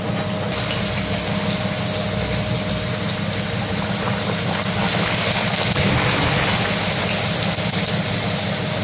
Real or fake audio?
real